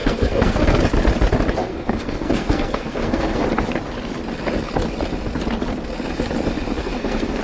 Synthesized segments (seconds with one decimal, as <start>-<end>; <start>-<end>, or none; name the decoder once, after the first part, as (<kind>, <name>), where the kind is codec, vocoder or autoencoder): 0.0-0.8 (codec, SNAC); 1.6-3.4; 6.8-7.4